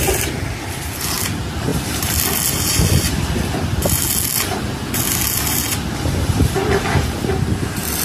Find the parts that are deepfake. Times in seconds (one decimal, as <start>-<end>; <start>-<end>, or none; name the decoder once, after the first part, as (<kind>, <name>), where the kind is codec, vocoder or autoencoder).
none